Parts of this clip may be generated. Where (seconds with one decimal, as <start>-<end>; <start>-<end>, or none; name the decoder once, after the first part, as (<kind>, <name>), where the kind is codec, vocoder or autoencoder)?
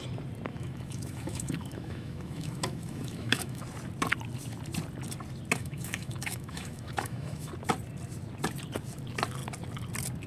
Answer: 0.5-3.6 (autoencoder, DAC-VAE); 5.6-7.5